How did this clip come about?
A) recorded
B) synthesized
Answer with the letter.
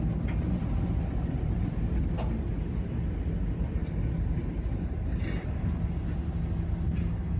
A